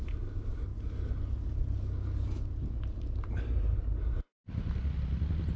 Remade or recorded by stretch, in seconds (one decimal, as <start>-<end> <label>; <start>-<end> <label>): 0.0-5.6 recorded